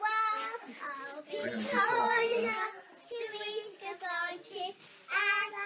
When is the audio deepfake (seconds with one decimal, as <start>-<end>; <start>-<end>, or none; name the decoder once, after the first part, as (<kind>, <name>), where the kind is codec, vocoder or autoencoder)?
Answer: none